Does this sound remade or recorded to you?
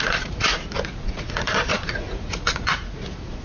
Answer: remade